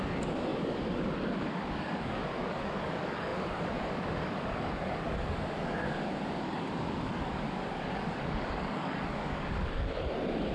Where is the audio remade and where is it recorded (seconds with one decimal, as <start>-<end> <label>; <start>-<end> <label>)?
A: 0.0-10.5 remade